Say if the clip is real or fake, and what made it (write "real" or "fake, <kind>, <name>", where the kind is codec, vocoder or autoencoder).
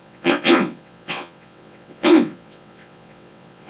fake, vocoder, WaveNeXt